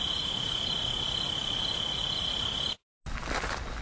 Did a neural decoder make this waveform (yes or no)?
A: no